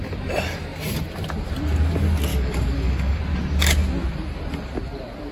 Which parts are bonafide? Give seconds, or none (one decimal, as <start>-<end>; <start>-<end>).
0.0-2.3; 3.2-5.3